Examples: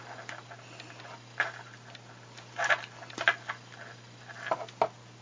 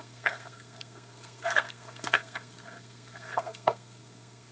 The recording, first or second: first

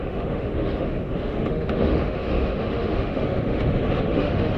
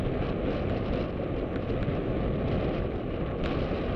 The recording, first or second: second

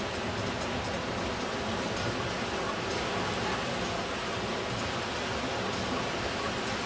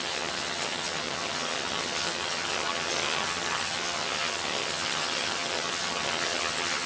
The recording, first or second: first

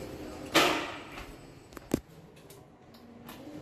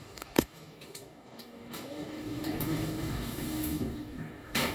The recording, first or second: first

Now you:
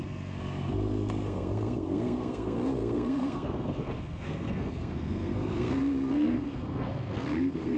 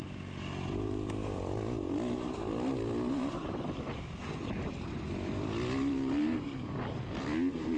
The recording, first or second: second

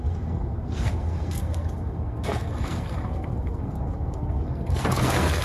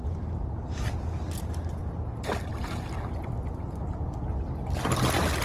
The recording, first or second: second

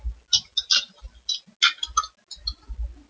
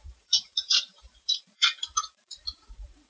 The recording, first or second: first